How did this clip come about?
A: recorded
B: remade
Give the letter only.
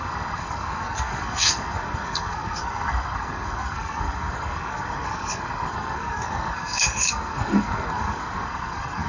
B